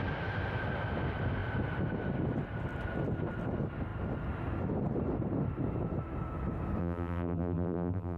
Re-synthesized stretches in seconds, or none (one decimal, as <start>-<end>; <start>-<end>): 6.8-8.2